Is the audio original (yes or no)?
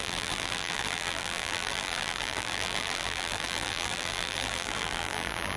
no